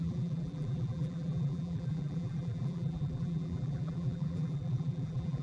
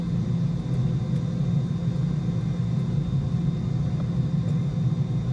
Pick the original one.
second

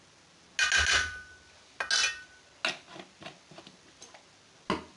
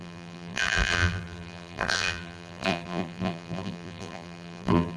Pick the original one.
first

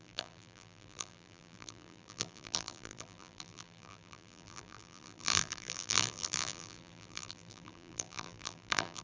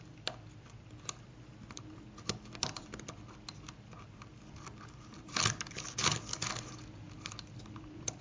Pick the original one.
second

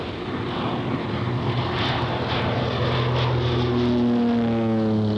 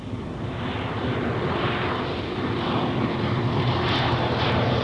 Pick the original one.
first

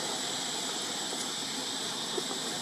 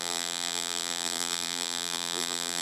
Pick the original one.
first